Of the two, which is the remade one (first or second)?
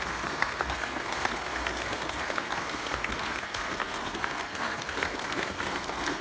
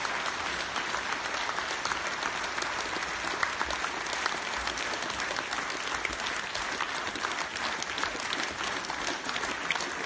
first